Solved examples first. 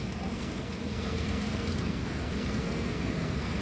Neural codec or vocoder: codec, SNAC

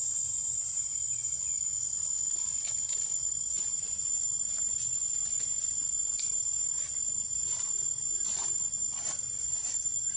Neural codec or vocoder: none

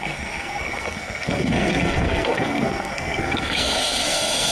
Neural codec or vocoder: codec, SNAC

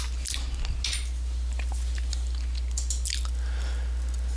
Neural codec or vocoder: none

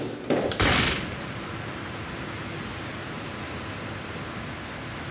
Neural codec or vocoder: none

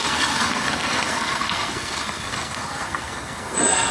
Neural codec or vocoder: codec, SNAC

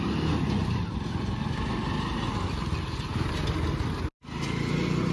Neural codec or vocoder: none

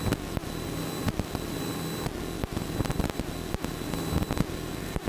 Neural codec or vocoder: none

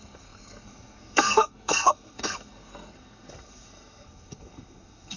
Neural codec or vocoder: codec, SNAC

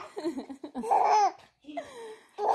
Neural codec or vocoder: none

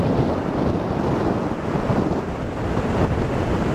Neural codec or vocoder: none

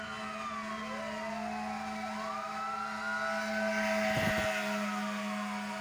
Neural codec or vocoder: none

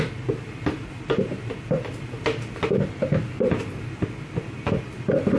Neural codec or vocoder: none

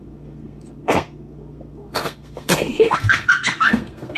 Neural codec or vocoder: codec, SNAC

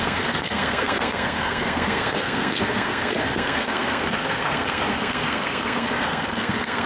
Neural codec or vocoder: codec, SNAC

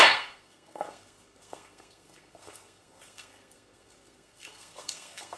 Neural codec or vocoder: codec, SNAC